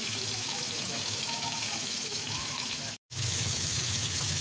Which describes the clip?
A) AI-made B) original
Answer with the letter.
A